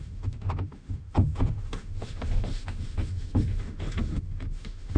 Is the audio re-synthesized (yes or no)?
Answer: yes